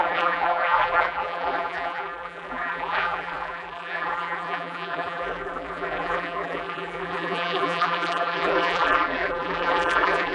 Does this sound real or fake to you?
fake